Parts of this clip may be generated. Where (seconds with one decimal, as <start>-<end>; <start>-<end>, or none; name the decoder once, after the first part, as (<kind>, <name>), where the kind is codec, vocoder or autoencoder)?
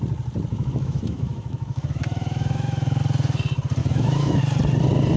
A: 0.5-3.0 (autoencoder, DAC-VAE); 3.8-4.4